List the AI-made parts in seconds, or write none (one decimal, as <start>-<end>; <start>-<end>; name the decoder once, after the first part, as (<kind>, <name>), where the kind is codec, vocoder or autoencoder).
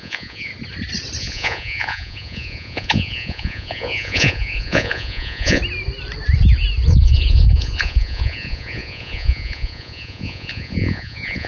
0.0-0.5 (vocoder, Vocos); 1.2-5.6; 6.9-11.5